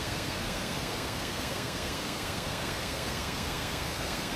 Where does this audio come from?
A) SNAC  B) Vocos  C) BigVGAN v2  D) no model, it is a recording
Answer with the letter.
A